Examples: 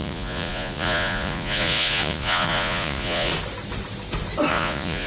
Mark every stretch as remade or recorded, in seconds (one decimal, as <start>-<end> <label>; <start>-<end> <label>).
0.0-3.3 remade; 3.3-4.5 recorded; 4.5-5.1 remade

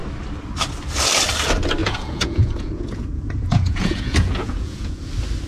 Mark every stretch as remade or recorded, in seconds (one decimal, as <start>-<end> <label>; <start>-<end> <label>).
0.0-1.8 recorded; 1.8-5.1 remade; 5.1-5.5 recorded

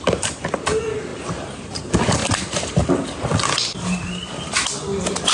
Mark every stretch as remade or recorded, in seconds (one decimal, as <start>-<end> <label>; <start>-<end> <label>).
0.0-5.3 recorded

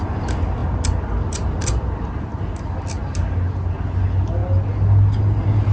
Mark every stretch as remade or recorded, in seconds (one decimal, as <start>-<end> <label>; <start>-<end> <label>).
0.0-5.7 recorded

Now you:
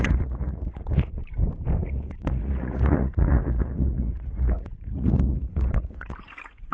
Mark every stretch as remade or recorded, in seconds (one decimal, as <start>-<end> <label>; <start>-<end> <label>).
0.0-1.2 remade; 1.2-1.8 recorded; 1.8-6.7 remade